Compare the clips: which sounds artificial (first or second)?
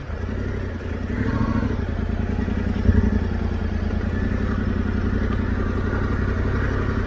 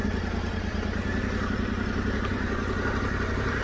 second